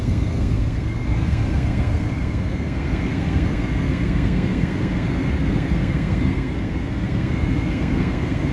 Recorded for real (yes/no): no